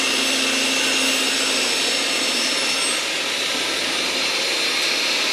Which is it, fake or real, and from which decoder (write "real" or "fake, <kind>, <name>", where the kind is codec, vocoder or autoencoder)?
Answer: real